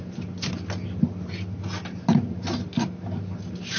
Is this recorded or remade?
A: recorded